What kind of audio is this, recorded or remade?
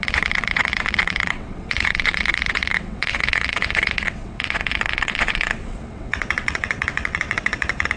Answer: remade